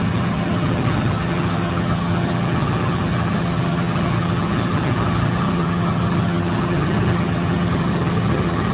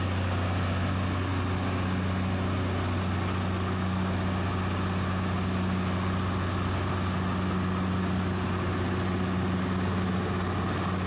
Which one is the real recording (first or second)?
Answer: second